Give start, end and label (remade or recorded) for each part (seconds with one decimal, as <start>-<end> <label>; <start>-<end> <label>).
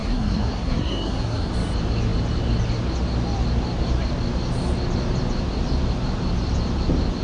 0.0-1.5 remade; 1.5-7.2 recorded